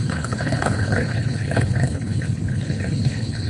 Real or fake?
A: fake